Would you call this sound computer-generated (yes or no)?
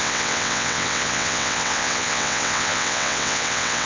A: yes